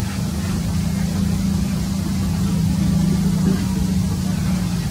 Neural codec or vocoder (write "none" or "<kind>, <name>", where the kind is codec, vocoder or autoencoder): none